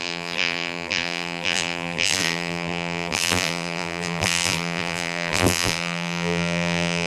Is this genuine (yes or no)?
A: no